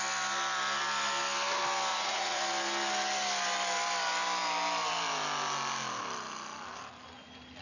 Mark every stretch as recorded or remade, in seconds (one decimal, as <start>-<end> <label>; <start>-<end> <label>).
0.0-1.9 recorded; 1.9-2.4 remade; 2.4-7.6 recorded